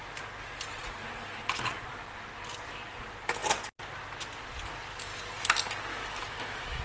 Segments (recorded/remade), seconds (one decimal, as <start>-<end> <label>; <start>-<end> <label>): 0.0-5.9 recorded; 5.9-6.8 remade